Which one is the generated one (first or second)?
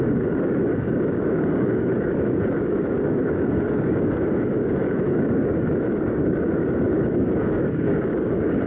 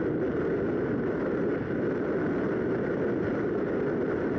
first